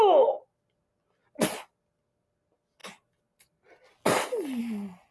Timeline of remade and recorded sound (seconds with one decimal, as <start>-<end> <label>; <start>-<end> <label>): 0.0-5.1 recorded